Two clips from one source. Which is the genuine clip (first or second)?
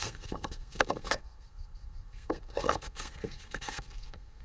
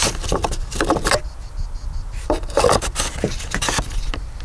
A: second